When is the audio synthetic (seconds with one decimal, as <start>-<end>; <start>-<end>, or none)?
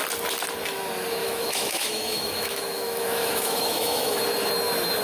1.2-4.2